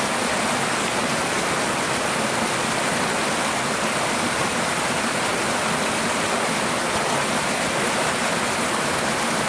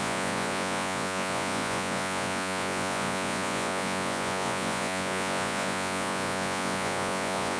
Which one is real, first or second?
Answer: first